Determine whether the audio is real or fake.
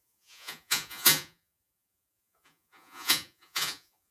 fake